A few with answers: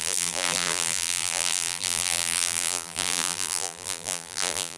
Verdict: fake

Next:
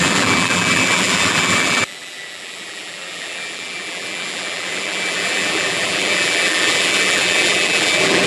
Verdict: fake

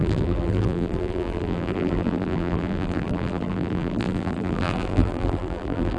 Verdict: fake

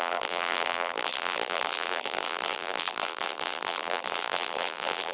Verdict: fake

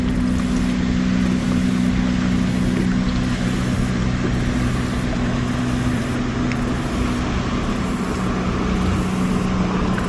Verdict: real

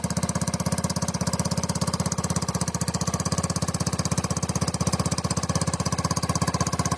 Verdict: real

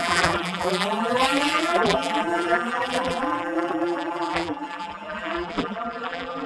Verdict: fake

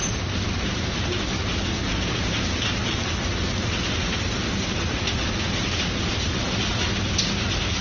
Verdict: real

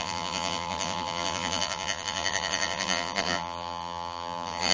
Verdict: fake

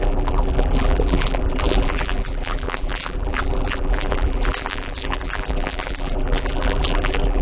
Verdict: fake